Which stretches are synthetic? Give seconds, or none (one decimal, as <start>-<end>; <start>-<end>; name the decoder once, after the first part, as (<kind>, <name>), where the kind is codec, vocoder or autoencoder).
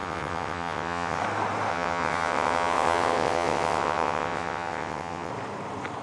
0.0-1.2 (vocoder, WaveNeXt); 1.7-5.3